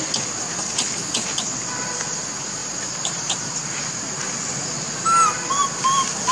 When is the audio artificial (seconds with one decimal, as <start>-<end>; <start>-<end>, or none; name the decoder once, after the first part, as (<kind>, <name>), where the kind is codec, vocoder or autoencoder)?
none